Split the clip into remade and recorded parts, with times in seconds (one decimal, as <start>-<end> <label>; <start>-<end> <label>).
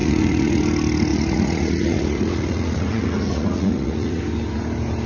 0.0-0.6 remade; 0.6-1.1 recorded; 1.1-4.2 remade; 4.2-5.1 recorded